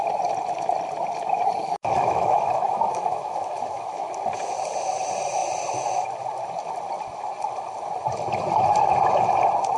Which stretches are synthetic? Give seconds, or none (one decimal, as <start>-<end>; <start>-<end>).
1.6-4.1